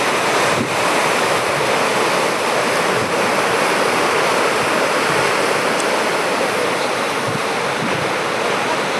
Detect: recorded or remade recorded